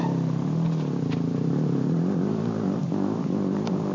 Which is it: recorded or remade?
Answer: recorded